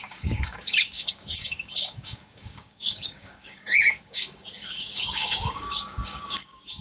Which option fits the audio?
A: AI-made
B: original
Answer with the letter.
A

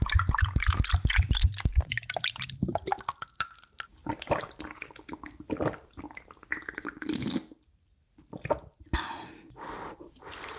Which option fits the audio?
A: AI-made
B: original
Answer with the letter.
B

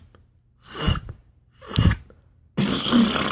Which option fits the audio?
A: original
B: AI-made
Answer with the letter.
A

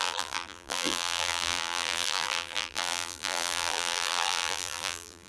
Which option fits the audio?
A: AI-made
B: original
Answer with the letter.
A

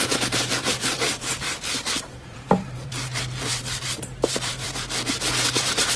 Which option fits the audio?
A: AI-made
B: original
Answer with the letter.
A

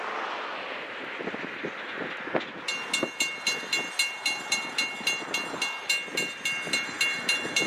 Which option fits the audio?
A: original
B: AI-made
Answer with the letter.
A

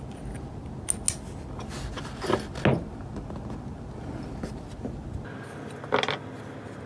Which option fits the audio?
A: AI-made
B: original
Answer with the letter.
B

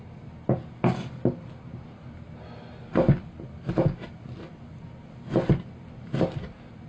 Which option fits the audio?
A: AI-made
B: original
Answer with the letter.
B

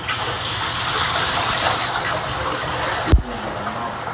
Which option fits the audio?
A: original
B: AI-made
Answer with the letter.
A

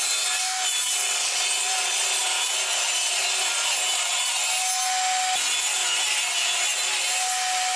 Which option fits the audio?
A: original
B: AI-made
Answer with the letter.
A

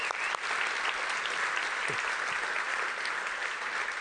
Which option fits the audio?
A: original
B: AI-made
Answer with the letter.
A